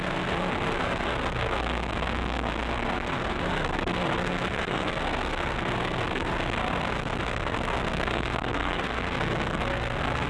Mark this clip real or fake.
fake